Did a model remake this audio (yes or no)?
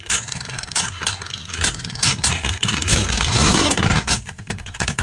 yes